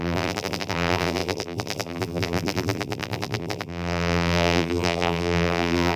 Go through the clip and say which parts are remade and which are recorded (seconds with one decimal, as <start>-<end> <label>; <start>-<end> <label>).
0.0-6.0 remade

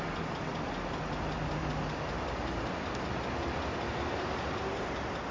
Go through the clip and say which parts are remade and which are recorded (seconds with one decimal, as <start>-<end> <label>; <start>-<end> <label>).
0.0-5.3 recorded

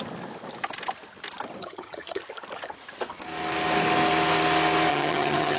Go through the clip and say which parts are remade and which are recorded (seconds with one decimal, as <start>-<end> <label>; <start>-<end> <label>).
0.0-1.6 recorded; 1.6-2.2 remade; 2.2-4.9 recorded; 4.9-5.6 remade

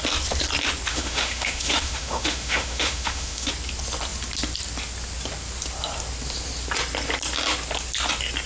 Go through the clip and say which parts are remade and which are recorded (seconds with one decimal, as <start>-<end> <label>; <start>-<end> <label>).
0.0-0.9 recorded; 0.9-3.5 remade; 3.5-8.5 recorded